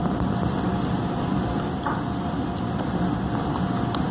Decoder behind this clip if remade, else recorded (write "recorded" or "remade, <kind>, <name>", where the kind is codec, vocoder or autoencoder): recorded